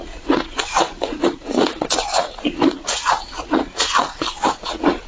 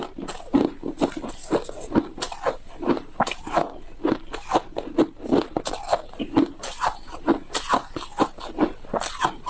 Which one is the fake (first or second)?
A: first